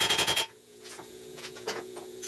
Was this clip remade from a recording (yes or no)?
yes